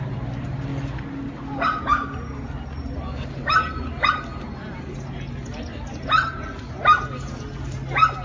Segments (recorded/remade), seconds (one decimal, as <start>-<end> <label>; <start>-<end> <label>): 0.0-8.2 recorded